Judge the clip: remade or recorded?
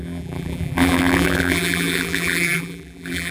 remade